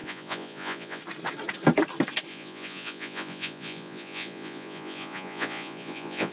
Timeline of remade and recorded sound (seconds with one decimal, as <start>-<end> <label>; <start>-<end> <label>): 0.0-1.0 remade; 1.0-2.3 recorded; 2.3-6.3 remade